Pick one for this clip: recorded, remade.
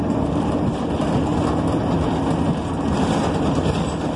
recorded